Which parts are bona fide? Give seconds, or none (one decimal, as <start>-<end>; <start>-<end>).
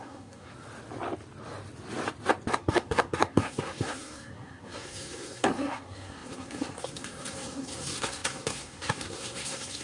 0.5-2.5